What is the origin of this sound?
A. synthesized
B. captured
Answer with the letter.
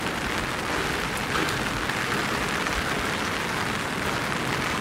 B